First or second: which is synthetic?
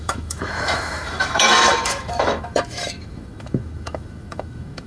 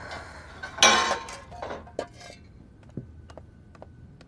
first